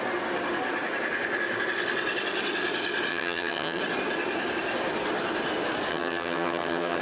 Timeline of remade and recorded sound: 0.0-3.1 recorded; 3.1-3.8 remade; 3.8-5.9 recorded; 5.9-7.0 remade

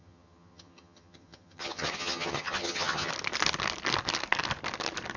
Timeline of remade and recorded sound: 0.0-3.1 remade; 3.1-5.2 recorded

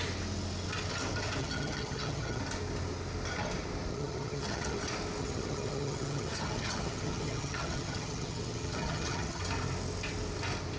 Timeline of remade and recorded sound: 0.0-1.4 recorded; 1.4-2.4 remade; 2.4-3.9 recorded; 3.9-4.8 remade; 4.8-5.2 recorded; 5.2-9.4 remade; 9.4-10.8 recorded

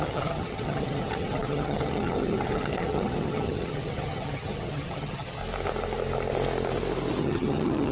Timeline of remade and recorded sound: 0.0-5.4 remade; 5.4-7.2 recorded; 7.2-7.9 remade

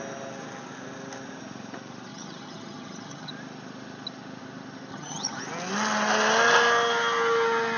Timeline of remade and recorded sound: 0.0-2.1 recorded; 2.1-3.3 remade; 3.3-4.9 recorded; 4.9-5.4 remade; 5.4-7.8 recorded